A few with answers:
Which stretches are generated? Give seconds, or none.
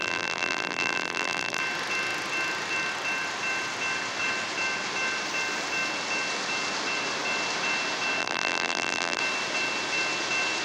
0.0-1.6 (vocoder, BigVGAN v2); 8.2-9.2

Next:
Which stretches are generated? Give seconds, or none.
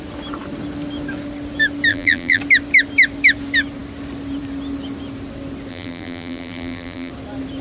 1.9-2.4 (vocoder, BigVGAN v2); 5.7-7.1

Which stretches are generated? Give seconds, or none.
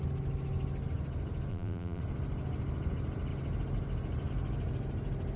1.5-2.0 (vocoder, BigVGAN v2)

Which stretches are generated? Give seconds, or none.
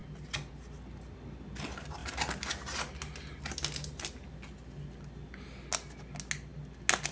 none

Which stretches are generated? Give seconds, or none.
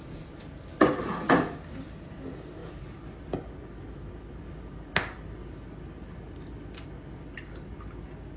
none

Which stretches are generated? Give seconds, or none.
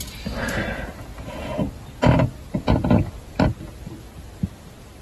0.0-5.0 (vocoder, BigVGAN v2)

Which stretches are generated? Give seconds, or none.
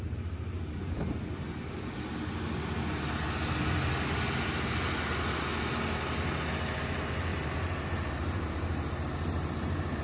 7.3-10.0 (vocoder, BigVGAN v2)